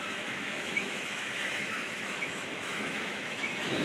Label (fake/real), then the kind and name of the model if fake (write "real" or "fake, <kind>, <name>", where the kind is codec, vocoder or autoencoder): fake, autoencoder, DAC-VAE